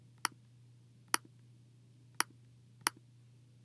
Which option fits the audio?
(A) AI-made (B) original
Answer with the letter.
B